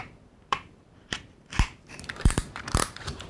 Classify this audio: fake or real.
fake